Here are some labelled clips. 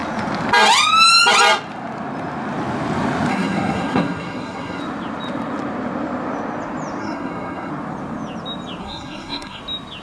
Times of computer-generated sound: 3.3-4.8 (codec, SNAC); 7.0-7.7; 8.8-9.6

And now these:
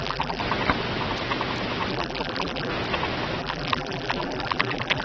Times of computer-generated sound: 0.0-0.4 (vocoder, BigVGAN v2); 1.9-2.7; 3.4-5.0